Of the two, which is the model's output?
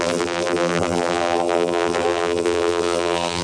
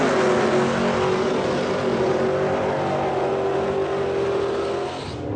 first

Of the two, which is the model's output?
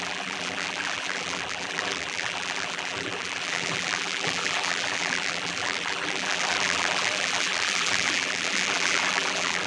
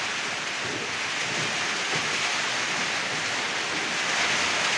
first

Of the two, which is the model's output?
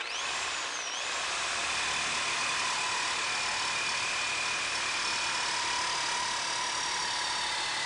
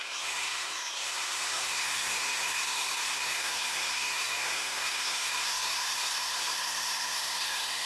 second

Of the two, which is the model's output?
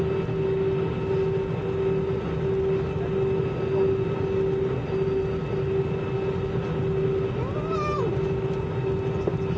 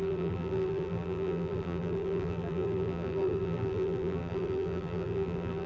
second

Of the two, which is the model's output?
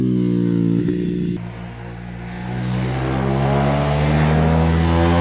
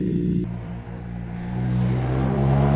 second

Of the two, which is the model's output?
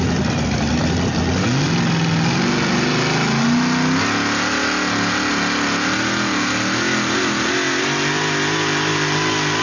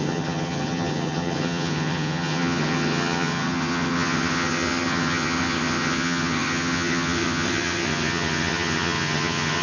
second